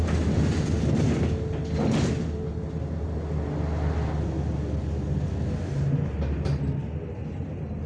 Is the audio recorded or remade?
recorded